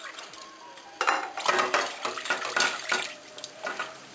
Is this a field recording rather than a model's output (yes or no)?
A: yes